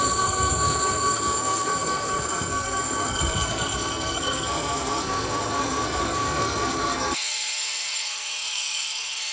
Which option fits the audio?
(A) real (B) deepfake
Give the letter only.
B